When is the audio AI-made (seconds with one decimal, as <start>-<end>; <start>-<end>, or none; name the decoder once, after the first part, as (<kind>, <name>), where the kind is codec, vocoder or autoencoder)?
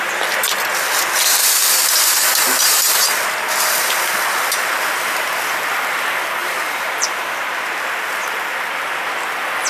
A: 6.4-7.6 (vocoder, BigVGAN v2)